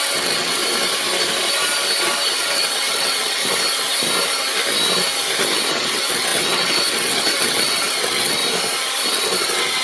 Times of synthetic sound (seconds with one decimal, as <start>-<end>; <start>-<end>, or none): 0.0-0.6; 2.4-3.4; 5.7-8.4; 9.1-9.8

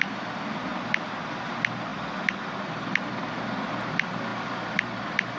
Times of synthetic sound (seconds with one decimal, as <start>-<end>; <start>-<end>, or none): none

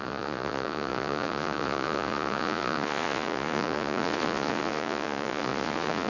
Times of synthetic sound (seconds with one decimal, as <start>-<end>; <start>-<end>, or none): 0.0-6.1

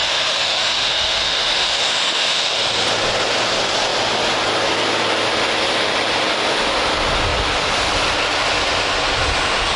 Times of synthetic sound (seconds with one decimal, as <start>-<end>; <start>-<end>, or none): 0.0-2.6

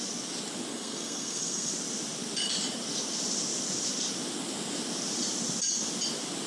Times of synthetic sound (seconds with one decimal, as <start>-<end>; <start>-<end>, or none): 0.7-1.7

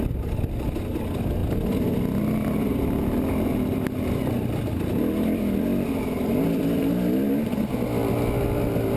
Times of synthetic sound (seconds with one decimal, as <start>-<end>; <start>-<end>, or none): none

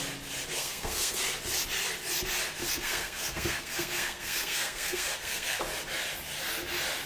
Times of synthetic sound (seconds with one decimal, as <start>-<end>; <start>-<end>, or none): 0.5-1.2; 2.6-5.6